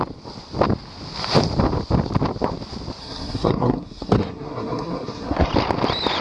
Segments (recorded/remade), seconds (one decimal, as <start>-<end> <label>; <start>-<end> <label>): 0.0-3.0 recorded; 3.0-5.5 remade; 5.5-6.2 recorded